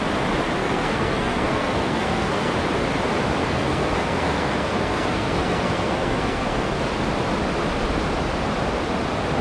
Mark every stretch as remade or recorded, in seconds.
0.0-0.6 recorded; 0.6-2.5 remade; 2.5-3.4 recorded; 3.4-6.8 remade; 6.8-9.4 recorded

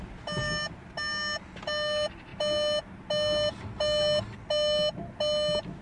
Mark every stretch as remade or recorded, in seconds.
0.0-5.8 recorded

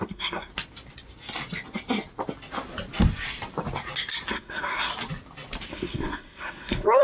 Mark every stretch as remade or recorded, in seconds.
0.0-0.5 remade; 0.5-4.3 recorded; 4.3-4.9 remade; 4.9-5.7 recorded; 5.7-7.0 remade

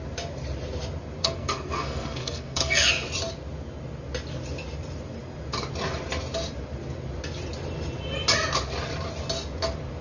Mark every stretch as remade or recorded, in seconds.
0.0-1.2 recorded; 1.2-2.9 remade; 2.9-10.0 recorded

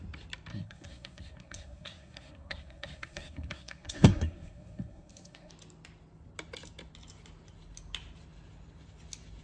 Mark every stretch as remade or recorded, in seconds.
0.0-0.5 recorded; 0.5-5.5 remade; 5.5-9.4 recorded